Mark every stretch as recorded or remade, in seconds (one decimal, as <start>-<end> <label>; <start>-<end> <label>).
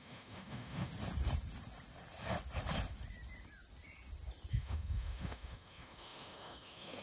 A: 0.0-0.9 remade; 0.9-4.5 recorded; 4.5-7.0 remade